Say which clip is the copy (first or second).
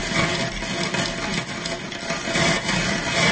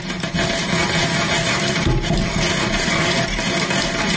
second